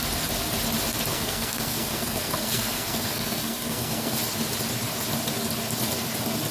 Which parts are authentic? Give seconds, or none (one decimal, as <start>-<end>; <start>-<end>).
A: 0.0-1.1; 4.2-6.5